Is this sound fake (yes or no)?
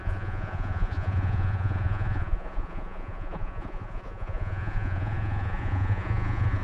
yes